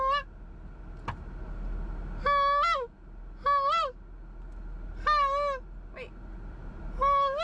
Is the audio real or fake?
real